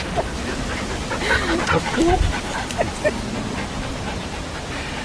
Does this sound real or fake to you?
real